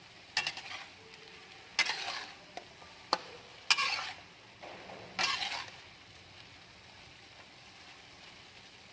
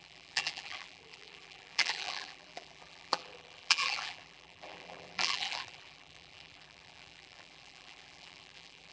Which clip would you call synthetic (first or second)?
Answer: second